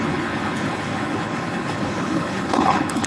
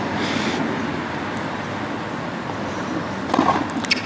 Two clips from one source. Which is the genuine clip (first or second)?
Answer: second